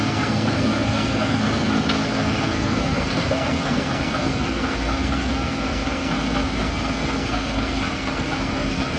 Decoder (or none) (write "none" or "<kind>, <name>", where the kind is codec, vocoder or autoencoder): codec, SNAC